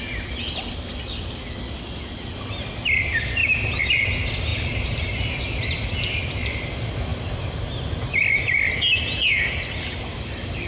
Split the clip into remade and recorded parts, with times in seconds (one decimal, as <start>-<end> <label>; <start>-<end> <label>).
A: 0.0-10.7 recorded